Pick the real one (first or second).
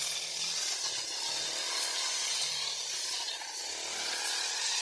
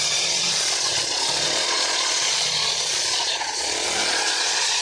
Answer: first